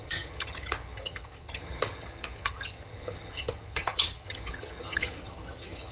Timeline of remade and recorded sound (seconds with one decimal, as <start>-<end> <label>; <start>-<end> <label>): 0.0-5.9 remade